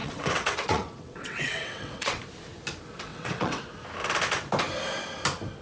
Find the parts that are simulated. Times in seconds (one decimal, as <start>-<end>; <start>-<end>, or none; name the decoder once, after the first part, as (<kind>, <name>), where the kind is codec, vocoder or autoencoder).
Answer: 0.0-2.2 (vocoder, WaveNeXt); 3.1-3.6